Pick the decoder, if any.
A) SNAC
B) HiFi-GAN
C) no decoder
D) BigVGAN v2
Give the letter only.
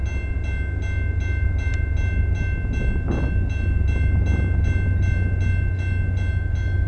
C